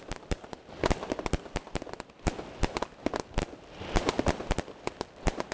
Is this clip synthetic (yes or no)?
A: no